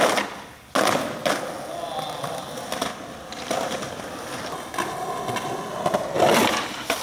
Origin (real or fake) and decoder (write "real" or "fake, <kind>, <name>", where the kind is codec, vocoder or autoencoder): real